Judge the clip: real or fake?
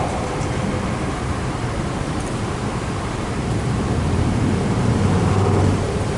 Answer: fake